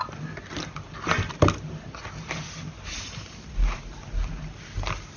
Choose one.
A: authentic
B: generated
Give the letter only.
A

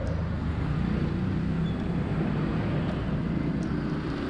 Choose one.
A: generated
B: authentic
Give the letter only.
B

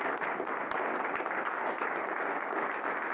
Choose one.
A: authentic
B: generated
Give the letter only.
A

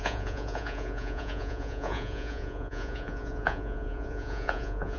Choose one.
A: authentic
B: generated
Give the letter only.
B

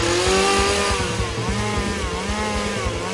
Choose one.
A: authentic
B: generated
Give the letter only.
A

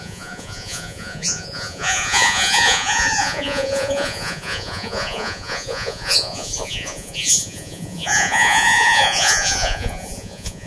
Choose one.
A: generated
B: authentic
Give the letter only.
A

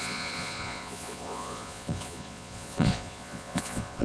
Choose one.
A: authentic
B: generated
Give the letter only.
B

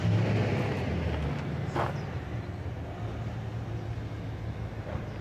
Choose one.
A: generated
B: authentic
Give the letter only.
B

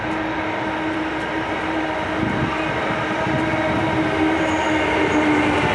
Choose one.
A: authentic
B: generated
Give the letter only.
A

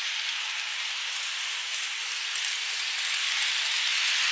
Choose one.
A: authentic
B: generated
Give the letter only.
A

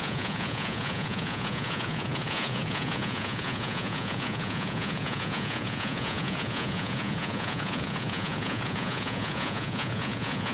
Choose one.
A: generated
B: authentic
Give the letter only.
A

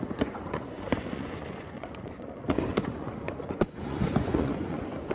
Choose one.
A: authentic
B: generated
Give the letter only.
B